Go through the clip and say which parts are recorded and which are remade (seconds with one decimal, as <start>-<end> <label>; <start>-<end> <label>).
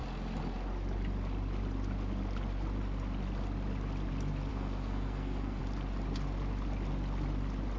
0.0-4.5 recorded; 4.5-5.6 remade; 5.6-7.8 recorded